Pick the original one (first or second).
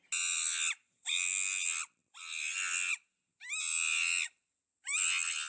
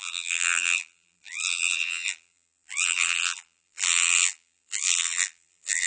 first